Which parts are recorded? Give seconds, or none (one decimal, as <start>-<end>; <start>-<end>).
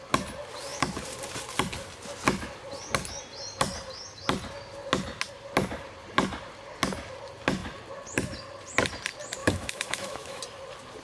0.0-9.4; 10.4-11.0